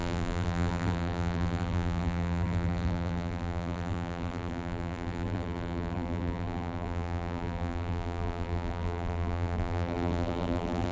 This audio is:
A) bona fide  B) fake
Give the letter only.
B